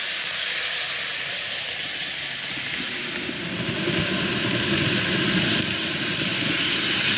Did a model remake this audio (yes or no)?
no